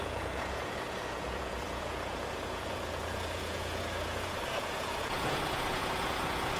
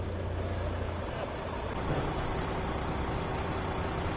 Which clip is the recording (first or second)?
second